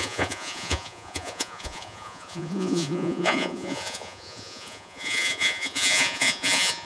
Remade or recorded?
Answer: remade